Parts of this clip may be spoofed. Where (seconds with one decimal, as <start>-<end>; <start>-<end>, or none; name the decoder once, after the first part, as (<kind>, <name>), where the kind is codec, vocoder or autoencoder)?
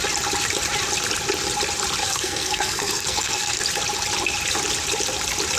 2.0-3.6 (codec, SNAC)